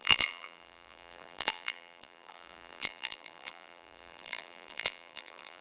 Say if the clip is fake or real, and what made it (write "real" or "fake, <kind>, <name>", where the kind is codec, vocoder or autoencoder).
fake, vocoder, BigVGAN v2